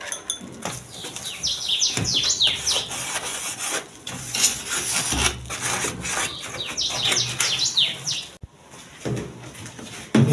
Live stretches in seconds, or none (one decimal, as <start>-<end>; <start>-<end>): 0.0-3.3; 4.6-10.3